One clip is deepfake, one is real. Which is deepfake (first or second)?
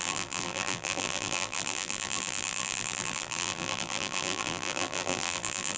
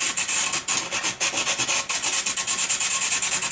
first